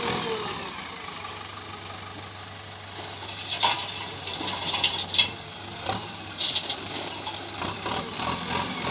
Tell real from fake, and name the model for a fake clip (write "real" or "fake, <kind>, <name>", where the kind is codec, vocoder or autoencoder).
real